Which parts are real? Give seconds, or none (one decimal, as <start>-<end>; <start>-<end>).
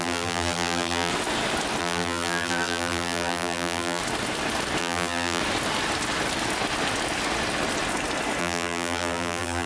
1.1-1.8; 4.0-4.8; 5.4-8.4